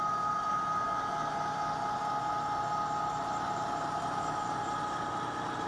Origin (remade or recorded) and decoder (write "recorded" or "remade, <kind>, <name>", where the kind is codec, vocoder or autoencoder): recorded